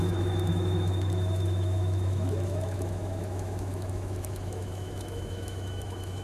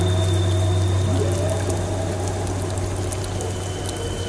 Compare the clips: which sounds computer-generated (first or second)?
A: first